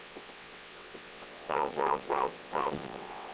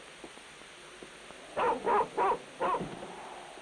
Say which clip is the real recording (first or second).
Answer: second